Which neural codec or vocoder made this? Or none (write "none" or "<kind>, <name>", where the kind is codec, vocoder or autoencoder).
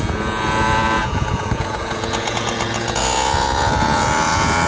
vocoder, Vocos